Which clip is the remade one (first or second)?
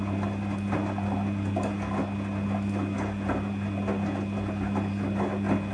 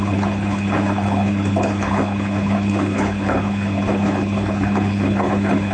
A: second